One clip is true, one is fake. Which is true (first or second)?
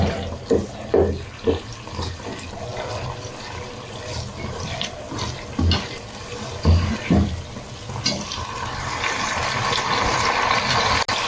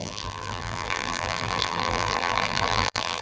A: first